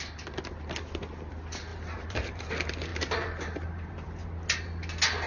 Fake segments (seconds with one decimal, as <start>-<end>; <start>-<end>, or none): 1.7-2.5; 2.9-4.2